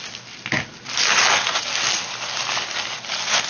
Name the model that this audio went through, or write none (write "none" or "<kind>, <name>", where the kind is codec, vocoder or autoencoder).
none